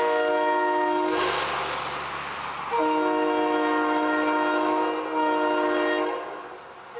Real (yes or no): yes